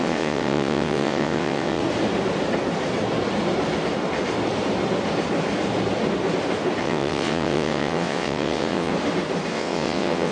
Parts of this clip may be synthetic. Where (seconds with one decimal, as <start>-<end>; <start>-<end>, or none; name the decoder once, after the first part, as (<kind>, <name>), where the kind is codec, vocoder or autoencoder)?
0.0-1.8 (vocoder, WaveNeXt); 6.8-8.9; 9.5-10.3